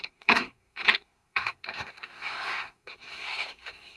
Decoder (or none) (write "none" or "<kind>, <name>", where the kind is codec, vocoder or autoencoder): codec, SNAC